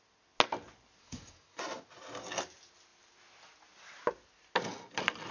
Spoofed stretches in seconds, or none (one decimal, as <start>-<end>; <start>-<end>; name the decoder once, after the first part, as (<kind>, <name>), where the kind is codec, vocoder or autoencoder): 1.0-1.6 (codec, SNAC)